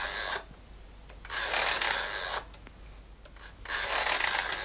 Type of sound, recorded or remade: recorded